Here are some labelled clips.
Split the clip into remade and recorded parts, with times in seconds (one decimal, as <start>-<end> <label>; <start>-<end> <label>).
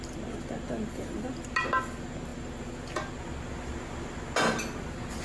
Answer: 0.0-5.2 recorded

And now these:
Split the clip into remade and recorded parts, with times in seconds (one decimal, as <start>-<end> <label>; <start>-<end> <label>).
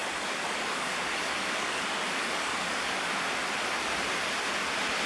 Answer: 0.0-3.1 remade; 3.1-5.1 recorded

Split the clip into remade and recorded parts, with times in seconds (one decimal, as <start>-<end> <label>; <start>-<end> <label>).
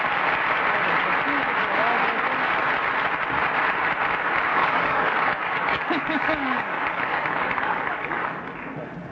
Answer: 0.0-4.5 recorded; 4.5-8.4 remade; 8.4-9.1 recorded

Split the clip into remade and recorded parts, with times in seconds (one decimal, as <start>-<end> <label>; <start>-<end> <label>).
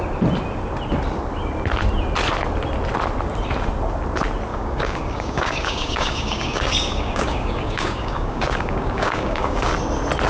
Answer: 0.0-4.5 recorded; 4.5-9.7 remade; 9.7-10.3 recorded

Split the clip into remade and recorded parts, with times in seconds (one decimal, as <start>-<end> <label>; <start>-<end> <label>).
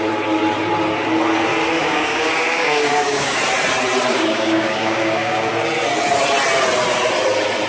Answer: 0.0-1.8 recorded; 1.8-3.4 remade; 3.4-4.1 recorded; 4.1-5.5 remade; 5.5-7.7 recorded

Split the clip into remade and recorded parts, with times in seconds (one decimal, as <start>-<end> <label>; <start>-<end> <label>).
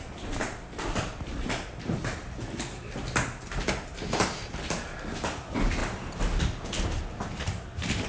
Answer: 0.0-8.1 recorded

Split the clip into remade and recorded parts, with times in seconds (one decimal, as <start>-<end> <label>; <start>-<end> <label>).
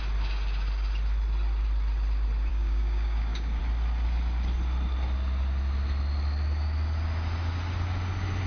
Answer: 0.0-2.5 recorded; 2.5-3.6 remade; 3.6-8.5 recorded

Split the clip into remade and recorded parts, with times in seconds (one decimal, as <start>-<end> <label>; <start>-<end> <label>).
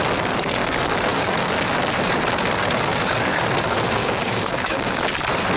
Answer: 0.0-4.0 recorded; 4.0-5.0 remade; 5.0-5.6 recorded